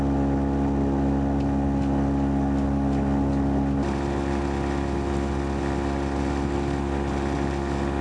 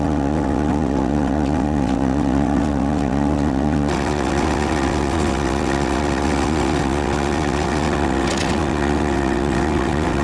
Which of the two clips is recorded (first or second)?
first